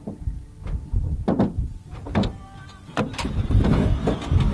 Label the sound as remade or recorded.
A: recorded